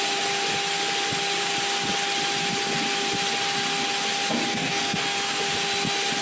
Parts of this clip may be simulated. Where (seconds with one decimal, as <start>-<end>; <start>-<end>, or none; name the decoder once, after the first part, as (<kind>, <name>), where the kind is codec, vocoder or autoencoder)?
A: 4.5-5.4 (codec, SNAC)